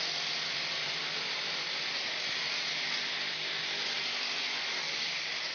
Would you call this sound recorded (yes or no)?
no